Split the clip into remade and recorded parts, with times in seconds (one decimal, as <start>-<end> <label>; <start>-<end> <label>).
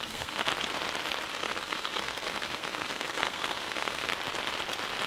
0.0-0.5 remade; 0.5-1.3 recorded; 1.3-4.1 remade; 4.1-5.1 recorded